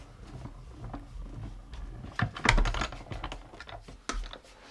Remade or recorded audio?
recorded